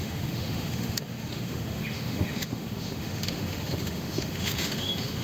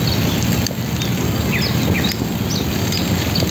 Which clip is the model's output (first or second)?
first